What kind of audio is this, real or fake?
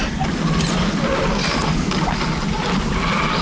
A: real